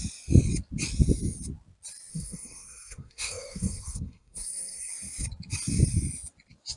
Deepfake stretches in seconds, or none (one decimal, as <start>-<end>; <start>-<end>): 2.1-4.9